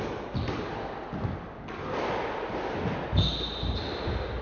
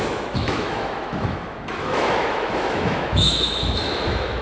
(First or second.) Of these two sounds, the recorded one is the first